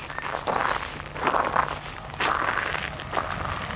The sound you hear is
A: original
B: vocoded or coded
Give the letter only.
A